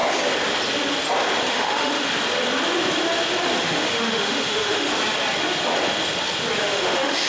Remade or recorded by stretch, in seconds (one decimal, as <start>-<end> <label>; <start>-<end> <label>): 0.0-1.5 recorded; 1.5-2.1 remade; 2.1-3.6 recorded; 3.6-4.9 remade; 4.9-6.6 recorded; 6.6-7.3 remade